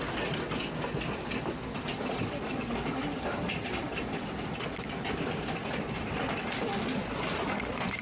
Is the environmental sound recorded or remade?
recorded